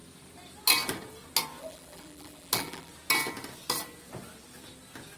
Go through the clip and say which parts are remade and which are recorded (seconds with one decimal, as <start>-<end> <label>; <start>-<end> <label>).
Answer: 0.0-1.6 recorded; 1.6-2.9 remade; 2.9-5.2 recorded